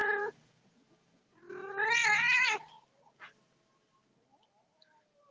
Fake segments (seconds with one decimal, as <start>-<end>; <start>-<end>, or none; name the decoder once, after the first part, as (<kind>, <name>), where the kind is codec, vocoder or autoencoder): 0.0-1.2 (vocoder, Vocos)